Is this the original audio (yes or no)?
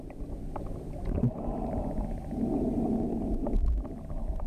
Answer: yes